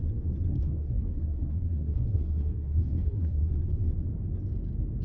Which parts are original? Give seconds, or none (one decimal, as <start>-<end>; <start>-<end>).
0.0-0.5; 3.5-5.0